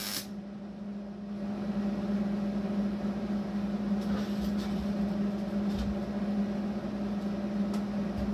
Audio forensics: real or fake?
real